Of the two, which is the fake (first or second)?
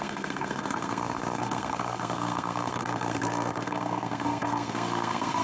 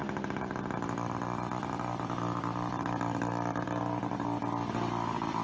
first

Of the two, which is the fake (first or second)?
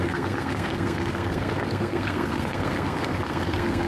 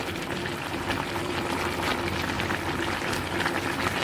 first